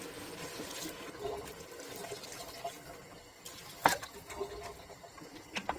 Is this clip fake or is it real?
real